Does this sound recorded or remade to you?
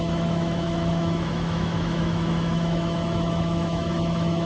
remade